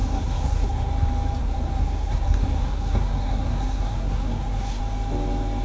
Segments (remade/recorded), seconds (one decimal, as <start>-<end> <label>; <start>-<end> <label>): 0.0-0.9 remade; 0.9-1.4 recorded; 1.4-4.8 remade; 4.8-5.6 recorded